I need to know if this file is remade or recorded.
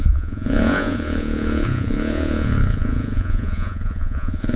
remade